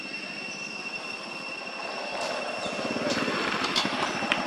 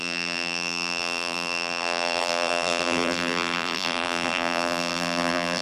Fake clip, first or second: second